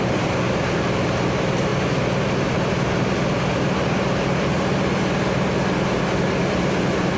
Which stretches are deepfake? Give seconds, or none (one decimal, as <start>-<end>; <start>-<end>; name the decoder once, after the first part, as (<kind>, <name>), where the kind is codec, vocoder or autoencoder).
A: none